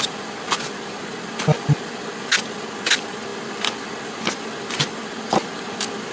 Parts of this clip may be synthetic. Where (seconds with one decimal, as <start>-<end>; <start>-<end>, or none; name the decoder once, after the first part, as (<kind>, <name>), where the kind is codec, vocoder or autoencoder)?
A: none